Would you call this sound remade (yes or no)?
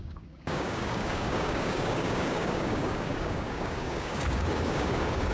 yes